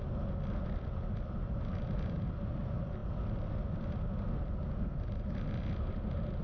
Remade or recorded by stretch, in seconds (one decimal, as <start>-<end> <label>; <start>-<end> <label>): 0.0-6.4 recorded